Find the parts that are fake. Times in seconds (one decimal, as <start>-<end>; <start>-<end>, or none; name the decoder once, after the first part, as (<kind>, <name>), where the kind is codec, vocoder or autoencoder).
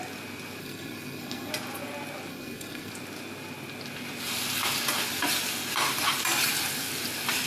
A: 0.6-1.5 (codec, SNAC); 2.3-2.9